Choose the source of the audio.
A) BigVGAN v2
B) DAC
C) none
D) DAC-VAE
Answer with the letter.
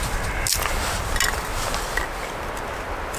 C